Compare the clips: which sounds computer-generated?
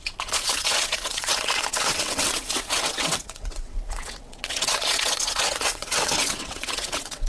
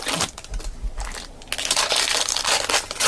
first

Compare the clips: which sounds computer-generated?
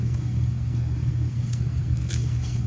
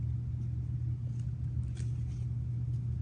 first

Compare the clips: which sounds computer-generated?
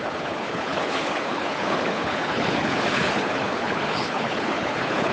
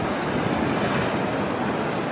first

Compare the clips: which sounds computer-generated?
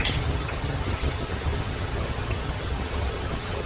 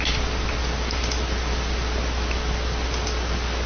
first